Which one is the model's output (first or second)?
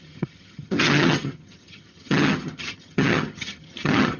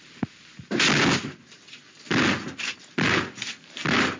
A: first